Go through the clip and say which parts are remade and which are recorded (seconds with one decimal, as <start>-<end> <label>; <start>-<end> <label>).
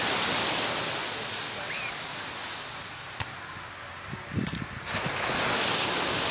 0.0-6.3 recorded